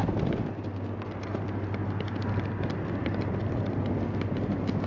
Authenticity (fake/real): real